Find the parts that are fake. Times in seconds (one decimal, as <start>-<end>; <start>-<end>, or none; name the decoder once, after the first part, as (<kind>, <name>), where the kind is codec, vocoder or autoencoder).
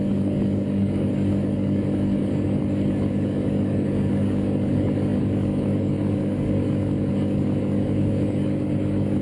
0.0-9.2 (codec, DAC)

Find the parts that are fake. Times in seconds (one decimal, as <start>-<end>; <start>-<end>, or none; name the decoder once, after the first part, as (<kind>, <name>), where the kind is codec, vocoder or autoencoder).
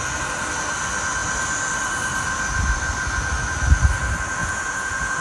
4.4-5.2 (vocoder, Vocos)